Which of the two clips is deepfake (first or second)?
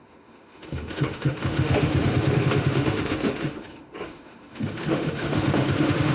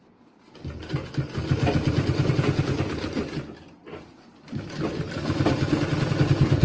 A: first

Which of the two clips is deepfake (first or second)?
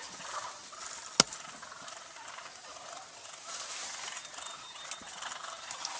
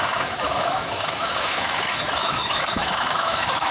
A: second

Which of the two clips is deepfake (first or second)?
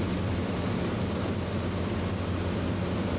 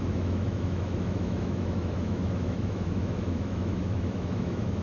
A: second